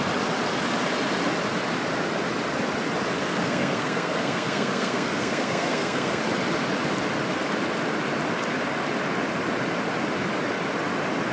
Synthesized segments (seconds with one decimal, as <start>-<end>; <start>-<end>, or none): 3.2-6.2